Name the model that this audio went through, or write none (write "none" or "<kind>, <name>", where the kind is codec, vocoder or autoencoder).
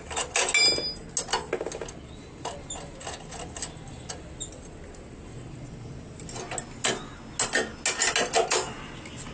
none